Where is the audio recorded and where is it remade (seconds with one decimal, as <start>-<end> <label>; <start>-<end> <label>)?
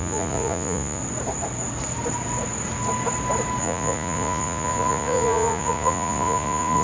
0.0-1.0 remade; 1.0-3.6 recorded; 3.6-6.8 remade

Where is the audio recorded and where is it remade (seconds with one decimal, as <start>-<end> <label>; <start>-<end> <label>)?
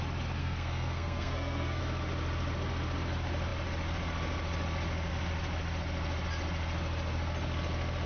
0.0-0.4 recorded; 0.4-1.8 remade; 1.8-8.1 recorded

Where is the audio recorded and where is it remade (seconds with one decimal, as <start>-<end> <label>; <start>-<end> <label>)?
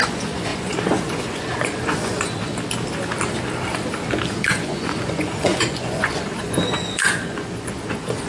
0.0-2.5 remade; 2.5-4.3 recorded; 4.3-8.3 remade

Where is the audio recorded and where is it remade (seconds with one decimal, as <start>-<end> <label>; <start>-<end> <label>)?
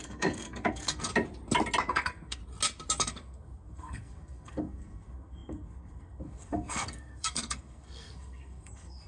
0.0-1.1 remade; 1.1-1.9 recorded; 1.9-2.4 remade; 2.4-3.0 recorded; 3.0-9.1 remade